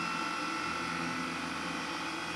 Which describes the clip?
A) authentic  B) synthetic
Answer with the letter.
A